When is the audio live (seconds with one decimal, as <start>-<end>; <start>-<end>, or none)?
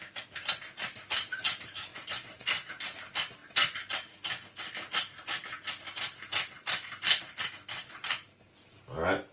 0.0-1.9; 2.7-9.3